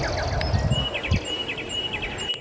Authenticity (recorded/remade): recorded